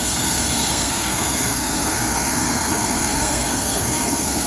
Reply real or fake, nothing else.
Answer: fake